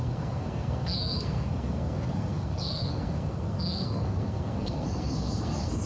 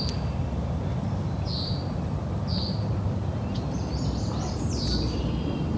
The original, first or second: second